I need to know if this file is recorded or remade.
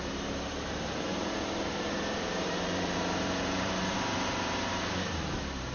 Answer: remade